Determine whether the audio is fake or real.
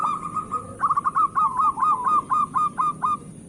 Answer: fake